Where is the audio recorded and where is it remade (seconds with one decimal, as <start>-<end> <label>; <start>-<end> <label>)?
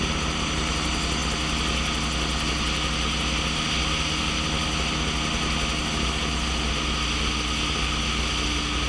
0.0-8.9 recorded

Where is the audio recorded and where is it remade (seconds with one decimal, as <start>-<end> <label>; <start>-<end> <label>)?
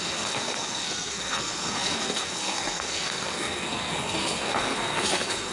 0.0-5.5 remade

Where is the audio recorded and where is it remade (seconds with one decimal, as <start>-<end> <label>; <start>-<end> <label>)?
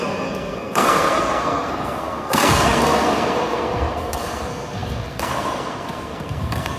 0.0-6.8 remade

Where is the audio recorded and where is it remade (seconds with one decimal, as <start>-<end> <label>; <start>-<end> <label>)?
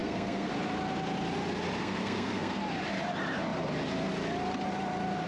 0.0-0.5 remade; 0.5-1.8 recorded; 1.8-2.6 remade; 2.6-5.3 recorded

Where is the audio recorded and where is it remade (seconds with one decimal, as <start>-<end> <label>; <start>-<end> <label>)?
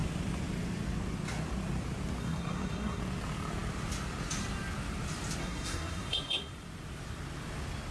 0.0-2.2 recorded; 2.2-3.0 remade; 3.0-5.4 recorded; 5.4-6.5 remade; 6.5-7.9 recorded